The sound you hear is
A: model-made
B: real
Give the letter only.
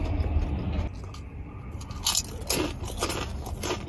B